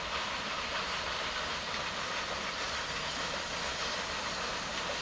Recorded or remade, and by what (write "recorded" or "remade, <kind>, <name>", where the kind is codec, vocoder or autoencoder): recorded